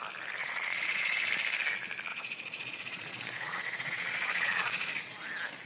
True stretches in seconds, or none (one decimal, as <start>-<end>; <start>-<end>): 0.0-0.4; 1.3-2.1; 5.0-5.7